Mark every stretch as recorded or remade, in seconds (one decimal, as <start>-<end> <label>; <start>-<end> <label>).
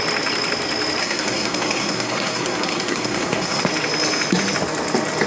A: 0.0-1.0 recorded; 1.0-3.6 remade; 3.6-5.3 recorded